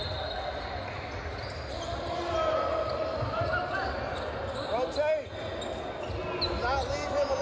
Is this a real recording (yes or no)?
yes